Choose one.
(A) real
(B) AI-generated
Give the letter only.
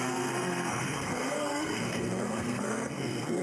B